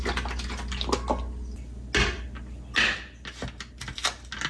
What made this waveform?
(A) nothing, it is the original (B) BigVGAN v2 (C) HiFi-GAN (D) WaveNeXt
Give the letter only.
A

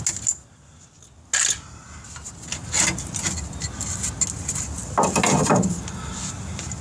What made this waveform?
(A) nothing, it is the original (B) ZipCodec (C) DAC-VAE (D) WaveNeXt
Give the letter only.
A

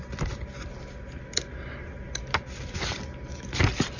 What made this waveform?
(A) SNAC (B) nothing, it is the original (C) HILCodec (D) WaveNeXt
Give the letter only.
B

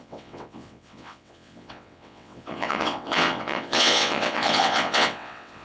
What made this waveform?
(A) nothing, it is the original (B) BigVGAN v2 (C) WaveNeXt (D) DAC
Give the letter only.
C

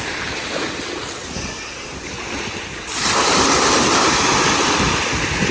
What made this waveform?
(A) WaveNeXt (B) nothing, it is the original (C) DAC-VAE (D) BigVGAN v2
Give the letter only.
B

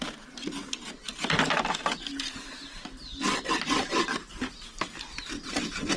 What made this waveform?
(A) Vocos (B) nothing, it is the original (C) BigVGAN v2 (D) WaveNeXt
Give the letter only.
B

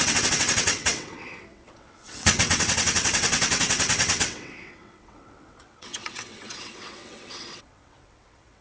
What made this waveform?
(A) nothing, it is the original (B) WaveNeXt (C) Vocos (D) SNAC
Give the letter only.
B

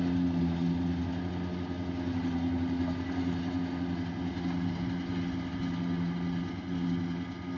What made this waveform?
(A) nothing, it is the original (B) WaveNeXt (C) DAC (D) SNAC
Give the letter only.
A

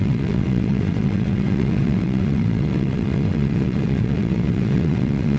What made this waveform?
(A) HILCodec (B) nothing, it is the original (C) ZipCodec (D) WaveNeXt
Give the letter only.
D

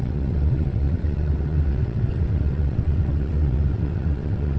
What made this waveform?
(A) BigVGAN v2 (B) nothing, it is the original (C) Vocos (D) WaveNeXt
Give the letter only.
D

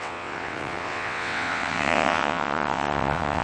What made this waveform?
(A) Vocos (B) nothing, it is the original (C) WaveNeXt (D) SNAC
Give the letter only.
C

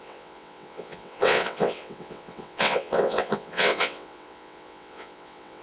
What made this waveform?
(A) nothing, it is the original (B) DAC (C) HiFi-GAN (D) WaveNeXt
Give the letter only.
D